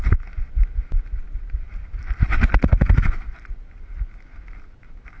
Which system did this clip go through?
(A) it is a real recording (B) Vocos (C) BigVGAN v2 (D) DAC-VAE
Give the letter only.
A